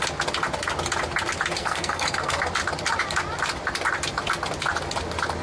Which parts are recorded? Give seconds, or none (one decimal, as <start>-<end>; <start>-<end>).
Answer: 0.0-1.6; 2.4-5.4